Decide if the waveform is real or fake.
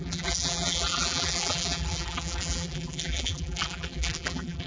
fake